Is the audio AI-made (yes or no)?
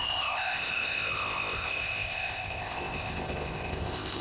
yes